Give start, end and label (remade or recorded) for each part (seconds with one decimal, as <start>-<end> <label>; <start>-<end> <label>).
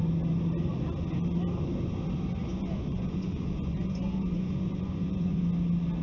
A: 0.0-2.4 recorded; 2.4-5.4 remade; 5.4-6.0 recorded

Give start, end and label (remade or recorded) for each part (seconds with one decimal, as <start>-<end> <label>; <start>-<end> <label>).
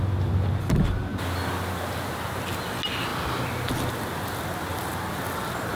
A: 0.0-5.8 recorded